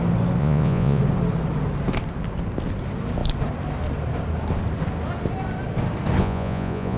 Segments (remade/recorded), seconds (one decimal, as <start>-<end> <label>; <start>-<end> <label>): 0.0-0.4 recorded; 0.4-1.0 remade; 1.0-6.2 recorded; 6.2-7.0 remade